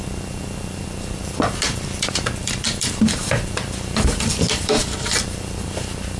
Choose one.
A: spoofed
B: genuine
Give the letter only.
A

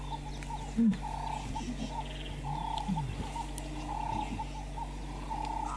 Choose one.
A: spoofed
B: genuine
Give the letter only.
B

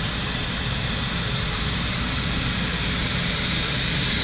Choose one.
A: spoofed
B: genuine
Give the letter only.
A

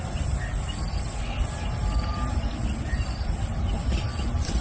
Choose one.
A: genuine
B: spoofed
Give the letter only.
B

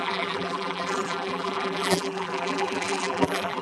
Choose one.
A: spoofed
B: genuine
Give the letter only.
A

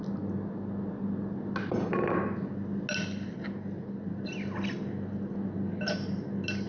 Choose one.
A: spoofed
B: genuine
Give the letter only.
B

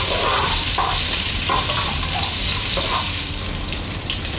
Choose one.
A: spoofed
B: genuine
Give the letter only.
A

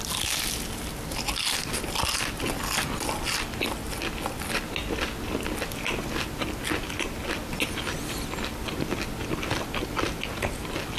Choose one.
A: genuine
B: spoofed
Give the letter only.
A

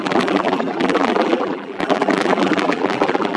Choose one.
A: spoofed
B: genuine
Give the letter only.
A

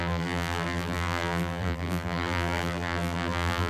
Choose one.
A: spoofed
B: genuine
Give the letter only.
A